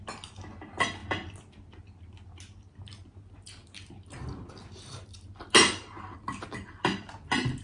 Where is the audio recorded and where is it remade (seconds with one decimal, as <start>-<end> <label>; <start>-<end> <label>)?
0.0-7.6 recorded